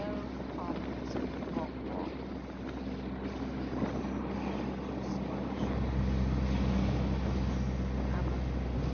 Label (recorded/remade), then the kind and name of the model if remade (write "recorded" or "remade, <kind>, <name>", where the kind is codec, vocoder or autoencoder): recorded